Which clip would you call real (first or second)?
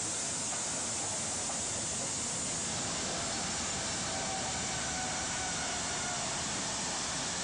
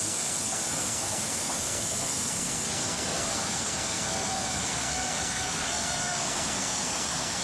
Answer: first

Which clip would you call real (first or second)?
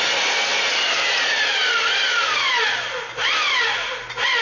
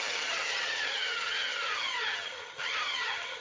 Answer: first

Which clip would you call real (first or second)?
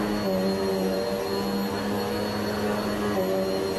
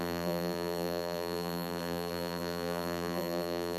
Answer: first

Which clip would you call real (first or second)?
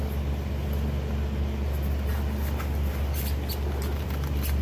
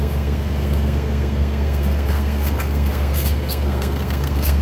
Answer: first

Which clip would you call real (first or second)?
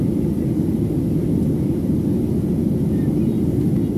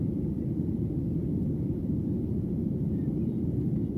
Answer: first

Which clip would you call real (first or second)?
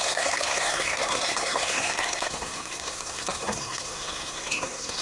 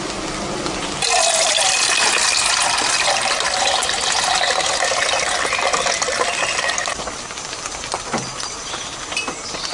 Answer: second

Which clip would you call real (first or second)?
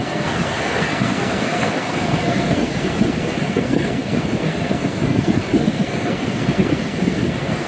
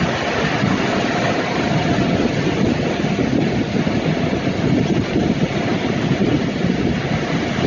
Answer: second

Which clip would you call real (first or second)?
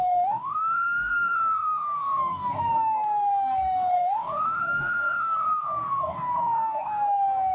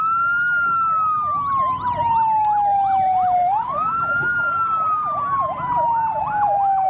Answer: second